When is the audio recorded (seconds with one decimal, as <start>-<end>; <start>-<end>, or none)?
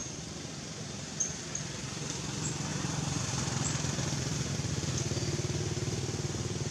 0.0-2.7; 3.2-6.7